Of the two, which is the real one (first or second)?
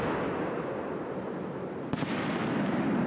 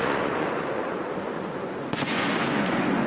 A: first